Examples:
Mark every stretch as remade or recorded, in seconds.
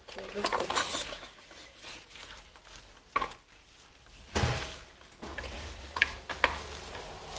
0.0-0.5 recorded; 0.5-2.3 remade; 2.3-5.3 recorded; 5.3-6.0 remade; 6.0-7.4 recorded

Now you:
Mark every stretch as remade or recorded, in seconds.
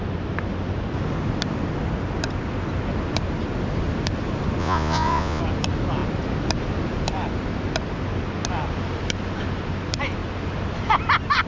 0.0-4.6 recorded; 4.6-5.4 remade; 5.4-11.5 recorded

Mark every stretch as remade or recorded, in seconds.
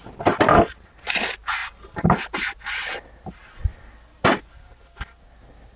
0.0-5.8 recorded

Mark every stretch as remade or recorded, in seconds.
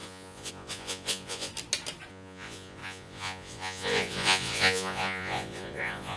0.0-1.5 remade; 1.5-2.1 recorded; 2.1-6.2 remade